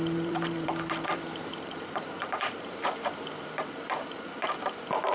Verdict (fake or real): fake